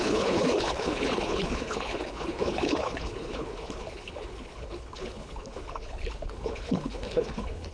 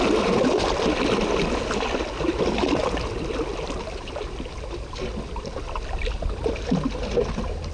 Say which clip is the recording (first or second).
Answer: second